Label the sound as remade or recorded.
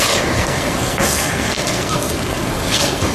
remade